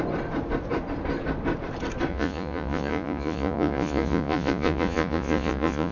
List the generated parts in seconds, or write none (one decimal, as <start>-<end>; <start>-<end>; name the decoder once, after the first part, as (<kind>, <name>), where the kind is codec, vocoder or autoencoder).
2.1-5.9 (vocoder, Vocos)